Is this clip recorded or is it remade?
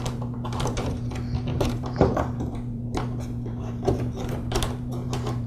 remade